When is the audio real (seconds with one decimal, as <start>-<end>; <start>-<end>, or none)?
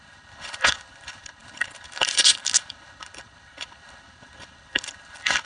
none